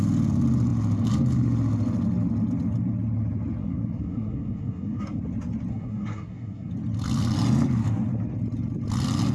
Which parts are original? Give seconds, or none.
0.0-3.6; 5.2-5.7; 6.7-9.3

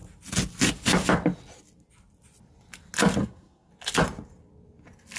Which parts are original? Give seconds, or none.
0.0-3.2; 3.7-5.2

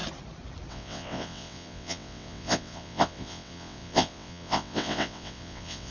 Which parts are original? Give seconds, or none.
0.0-0.7